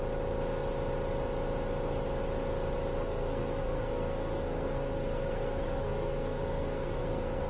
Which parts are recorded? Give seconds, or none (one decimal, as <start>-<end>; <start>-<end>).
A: 0.0-3.0

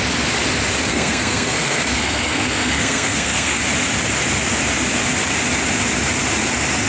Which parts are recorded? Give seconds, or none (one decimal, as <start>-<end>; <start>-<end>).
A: 0.0-0.9; 3.6-6.9

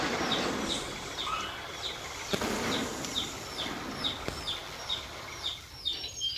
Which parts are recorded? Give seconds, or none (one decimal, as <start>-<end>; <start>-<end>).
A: 0.0-6.4